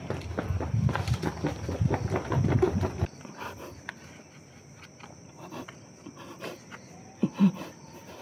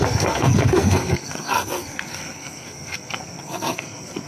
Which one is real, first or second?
first